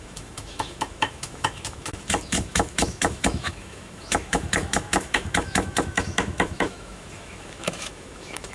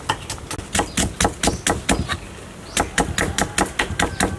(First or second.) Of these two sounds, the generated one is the first